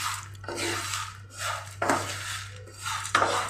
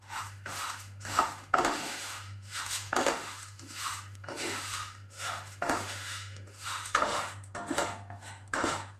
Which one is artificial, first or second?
second